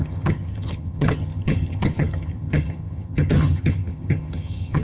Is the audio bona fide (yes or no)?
no